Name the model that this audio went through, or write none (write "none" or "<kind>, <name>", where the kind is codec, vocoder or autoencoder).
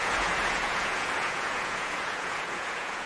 vocoder, Vocos